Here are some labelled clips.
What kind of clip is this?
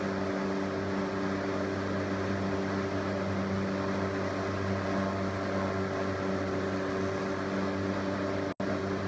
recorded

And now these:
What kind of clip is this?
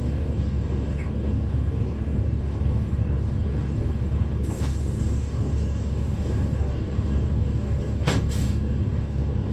remade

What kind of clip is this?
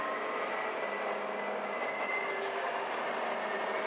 recorded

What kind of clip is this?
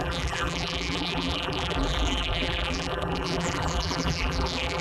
remade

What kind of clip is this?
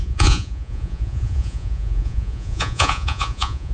remade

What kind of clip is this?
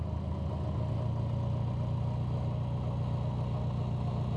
recorded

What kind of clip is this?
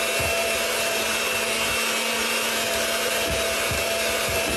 recorded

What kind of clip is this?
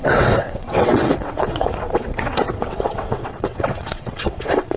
remade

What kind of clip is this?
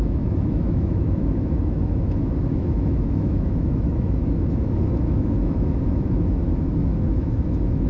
remade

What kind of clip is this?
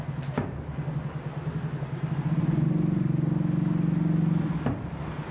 recorded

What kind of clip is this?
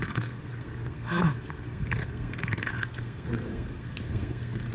remade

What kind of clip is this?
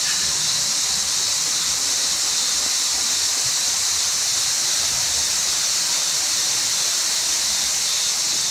recorded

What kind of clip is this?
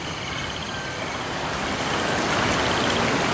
recorded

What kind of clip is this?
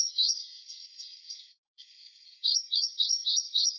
remade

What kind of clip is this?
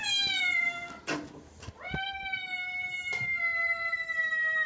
recorded